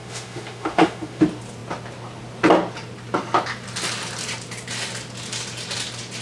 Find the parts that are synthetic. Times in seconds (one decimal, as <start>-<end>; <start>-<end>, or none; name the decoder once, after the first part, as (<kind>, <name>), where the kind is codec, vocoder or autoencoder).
0.0-1.2 (autoencoder, DAC-VAE)